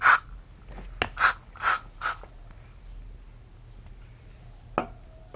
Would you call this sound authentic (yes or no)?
yes